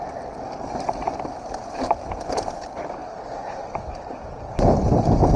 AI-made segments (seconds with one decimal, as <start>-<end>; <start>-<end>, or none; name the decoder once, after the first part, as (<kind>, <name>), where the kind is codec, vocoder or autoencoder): none